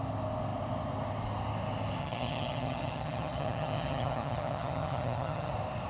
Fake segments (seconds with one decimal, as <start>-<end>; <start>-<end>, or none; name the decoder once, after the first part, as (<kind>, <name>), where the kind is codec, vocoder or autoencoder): 2.0-5.5 (vocoder, HiFi-GAN)